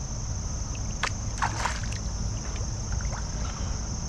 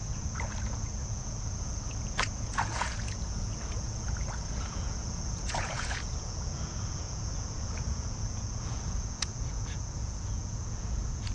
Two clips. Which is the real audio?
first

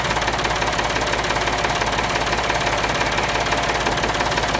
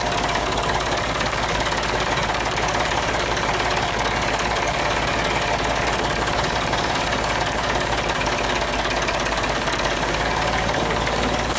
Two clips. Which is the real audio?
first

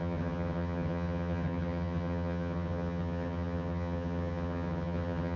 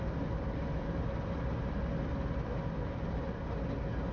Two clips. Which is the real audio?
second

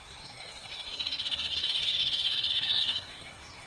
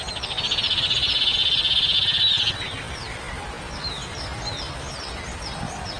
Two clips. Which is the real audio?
second